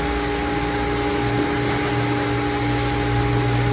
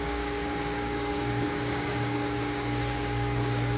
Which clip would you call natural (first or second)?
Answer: first